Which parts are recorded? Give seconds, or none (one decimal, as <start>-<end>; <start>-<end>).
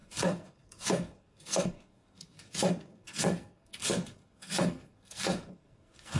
none